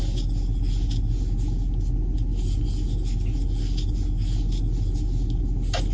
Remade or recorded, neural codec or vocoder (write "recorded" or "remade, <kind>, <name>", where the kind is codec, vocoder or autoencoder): recorded